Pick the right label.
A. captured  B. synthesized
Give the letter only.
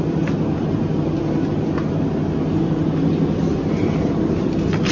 A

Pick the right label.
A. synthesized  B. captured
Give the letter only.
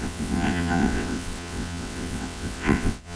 A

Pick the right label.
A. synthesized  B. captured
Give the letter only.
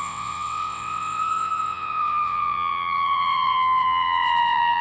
A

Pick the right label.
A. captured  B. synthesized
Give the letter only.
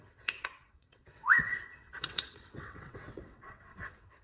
B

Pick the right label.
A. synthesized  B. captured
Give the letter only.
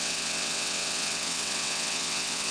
A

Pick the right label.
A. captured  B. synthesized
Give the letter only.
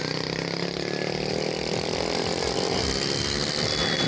A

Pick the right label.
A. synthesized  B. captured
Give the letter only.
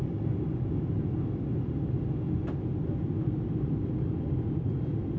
B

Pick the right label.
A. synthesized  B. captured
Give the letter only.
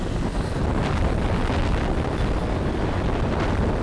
B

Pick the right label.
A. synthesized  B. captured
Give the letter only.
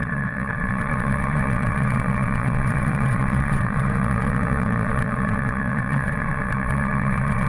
A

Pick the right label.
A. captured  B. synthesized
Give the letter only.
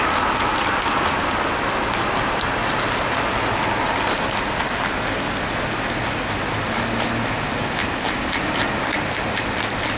A